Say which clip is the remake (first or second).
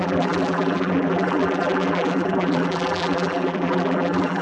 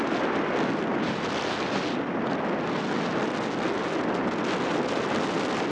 first